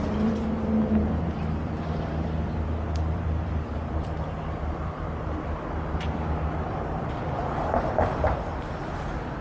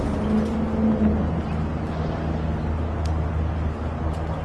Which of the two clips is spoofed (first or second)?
first